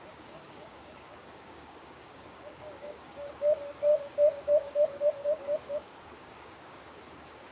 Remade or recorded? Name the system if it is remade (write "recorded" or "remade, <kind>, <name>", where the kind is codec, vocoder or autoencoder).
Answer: remade, codec, DAC